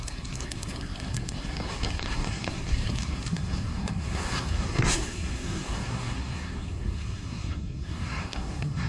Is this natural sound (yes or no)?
no